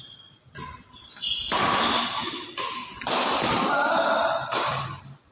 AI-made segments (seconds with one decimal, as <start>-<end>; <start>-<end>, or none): none